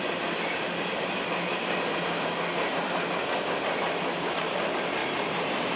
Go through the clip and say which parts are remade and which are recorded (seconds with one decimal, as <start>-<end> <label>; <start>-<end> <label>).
0.0-5.8 recorded